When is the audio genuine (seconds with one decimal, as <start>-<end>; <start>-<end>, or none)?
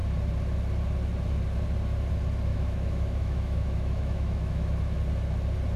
0.0-2.5; 5.0-5.8